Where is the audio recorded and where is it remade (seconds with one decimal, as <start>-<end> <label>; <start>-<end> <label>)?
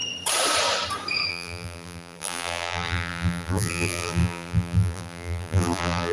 0.0-1.3 recorded; 1.3-6.1 remade